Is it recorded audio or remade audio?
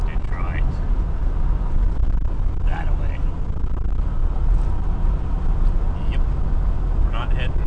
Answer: recorded